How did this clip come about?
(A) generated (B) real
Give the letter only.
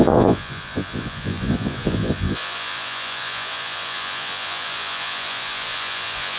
A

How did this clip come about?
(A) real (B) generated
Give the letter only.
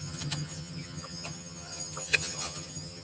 B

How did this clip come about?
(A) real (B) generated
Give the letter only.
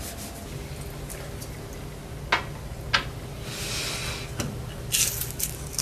A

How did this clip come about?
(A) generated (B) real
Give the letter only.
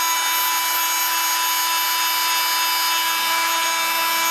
B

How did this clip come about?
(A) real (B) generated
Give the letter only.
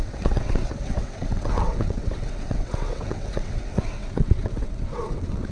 B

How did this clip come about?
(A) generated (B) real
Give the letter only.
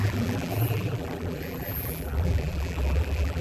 A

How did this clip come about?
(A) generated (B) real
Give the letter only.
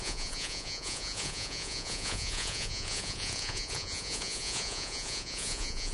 A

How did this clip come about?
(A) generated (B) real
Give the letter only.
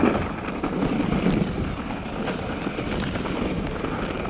B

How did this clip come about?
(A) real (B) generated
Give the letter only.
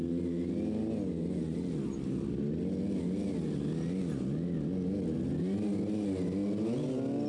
A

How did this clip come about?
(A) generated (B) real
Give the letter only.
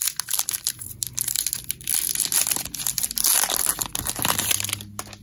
B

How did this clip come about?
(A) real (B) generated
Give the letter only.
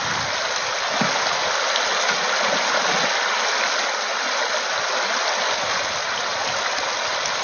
A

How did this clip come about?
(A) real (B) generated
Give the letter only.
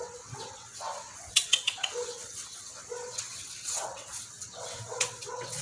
B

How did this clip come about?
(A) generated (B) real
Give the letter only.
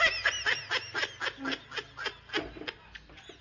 B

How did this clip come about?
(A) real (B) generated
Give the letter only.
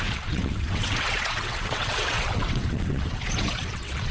B